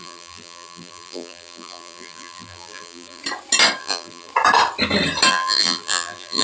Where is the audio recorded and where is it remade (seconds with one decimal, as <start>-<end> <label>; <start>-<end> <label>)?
0.0-3.2 remade; 3.2-3.8 recorded; 3.8-4.3 remade; 4.3-5.3 recorded; 5.3-6.4 remade